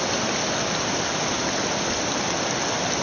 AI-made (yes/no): no